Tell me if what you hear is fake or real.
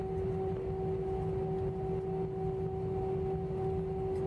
real